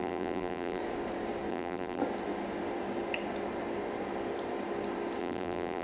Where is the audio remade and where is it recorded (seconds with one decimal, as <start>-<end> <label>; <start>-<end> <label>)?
0.0-0.8 remade; 0.8-1.5 recorded; 1.5-2.0 remade; 2.0-5.2 recorded; 5.2-5.8 remade